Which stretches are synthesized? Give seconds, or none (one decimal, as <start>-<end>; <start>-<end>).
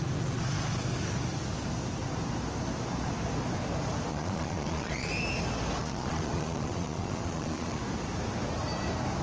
4.1-5.1; 5.8-7.8